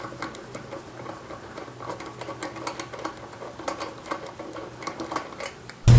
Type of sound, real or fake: real